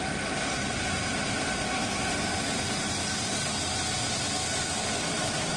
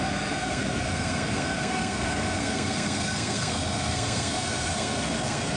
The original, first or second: first